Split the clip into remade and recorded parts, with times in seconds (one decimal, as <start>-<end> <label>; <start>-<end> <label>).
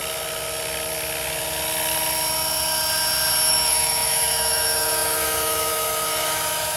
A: 0.0-3.5 recorded; 3.5-6.8 remade